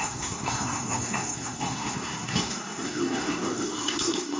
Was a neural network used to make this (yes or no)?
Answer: yes